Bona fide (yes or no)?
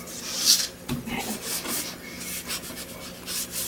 yes